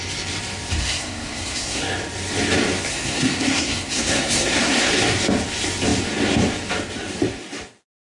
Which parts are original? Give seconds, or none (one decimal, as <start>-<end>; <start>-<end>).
0.0-0.8; 1.8-2.9; 4.9-8.0